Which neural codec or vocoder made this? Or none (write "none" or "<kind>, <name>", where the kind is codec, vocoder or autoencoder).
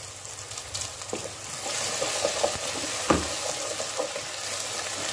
none